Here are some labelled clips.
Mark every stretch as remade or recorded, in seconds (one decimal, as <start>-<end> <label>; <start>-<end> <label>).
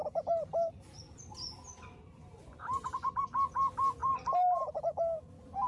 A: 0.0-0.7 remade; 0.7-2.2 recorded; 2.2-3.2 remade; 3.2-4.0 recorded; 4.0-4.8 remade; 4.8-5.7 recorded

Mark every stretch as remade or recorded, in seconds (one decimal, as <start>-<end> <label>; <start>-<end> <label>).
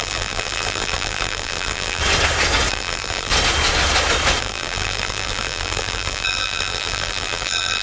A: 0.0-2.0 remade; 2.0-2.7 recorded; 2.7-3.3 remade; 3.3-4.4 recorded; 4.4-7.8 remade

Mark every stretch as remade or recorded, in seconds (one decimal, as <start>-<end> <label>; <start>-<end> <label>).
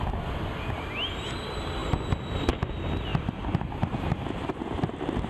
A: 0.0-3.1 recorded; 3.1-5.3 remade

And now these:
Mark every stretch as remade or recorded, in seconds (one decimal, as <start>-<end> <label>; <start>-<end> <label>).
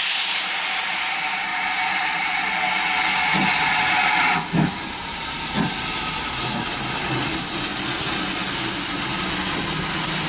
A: 0.0-10.3 recorded